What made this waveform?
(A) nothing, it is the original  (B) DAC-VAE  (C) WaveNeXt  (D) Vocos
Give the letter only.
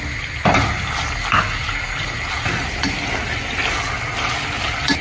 A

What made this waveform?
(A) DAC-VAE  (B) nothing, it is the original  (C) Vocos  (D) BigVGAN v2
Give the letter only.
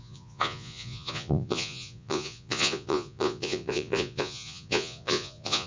C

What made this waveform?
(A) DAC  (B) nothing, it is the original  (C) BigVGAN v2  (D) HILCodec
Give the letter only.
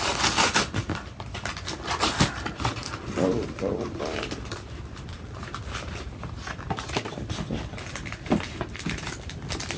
B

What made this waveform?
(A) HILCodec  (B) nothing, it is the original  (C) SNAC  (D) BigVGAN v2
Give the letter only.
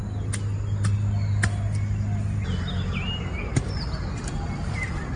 B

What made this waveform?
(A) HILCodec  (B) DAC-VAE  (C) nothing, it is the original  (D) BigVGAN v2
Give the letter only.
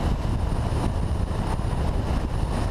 C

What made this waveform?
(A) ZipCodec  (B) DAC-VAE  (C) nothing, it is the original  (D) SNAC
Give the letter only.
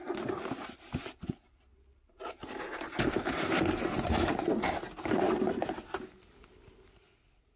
C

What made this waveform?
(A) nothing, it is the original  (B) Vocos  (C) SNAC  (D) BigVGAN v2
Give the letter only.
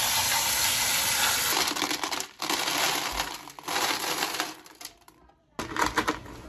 A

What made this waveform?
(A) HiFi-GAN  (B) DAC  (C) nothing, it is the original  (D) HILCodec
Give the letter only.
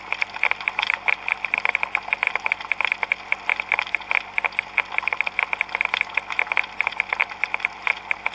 C